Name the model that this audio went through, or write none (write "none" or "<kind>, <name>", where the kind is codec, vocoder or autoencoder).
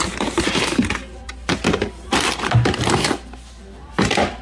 none